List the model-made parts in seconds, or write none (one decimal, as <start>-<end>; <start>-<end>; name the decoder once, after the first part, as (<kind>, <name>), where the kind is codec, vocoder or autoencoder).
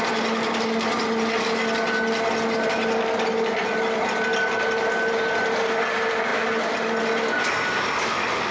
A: none